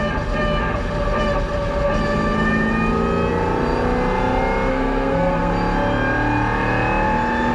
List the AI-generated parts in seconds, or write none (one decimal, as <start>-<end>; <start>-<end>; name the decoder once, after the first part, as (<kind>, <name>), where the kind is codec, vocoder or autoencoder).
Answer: 4.7-5.5 (codec, SNAC)